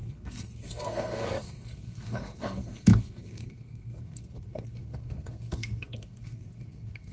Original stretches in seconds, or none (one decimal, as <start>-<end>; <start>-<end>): none